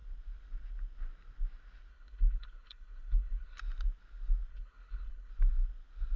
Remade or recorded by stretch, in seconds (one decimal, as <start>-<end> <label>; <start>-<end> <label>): 0.0-1.9 recorded; 1.9-3.6 remade; 3.6-4.5 recorded; 4.5-5.3 remade; 5.3-6.2 recorded